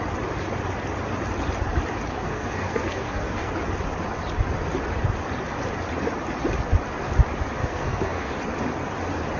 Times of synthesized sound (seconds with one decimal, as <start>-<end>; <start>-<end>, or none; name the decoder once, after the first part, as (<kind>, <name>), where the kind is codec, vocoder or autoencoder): 2.1-3.5 (codec, SNAC); 7.6-8.3